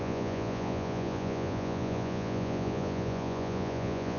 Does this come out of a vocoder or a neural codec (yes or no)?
yes